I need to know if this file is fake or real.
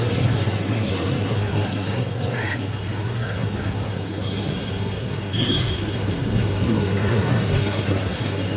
fake